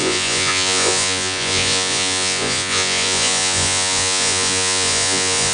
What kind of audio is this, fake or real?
fake